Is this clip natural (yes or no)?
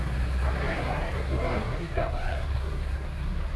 no